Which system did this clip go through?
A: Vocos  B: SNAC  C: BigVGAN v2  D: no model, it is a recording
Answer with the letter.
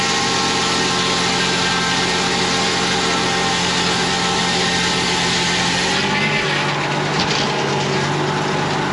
D